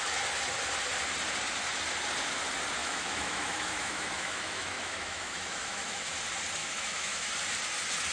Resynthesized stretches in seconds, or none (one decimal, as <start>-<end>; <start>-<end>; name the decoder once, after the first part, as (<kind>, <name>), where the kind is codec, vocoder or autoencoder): 2.8-6.1 (autoencoder, DAC-VAE); 6.6-7.3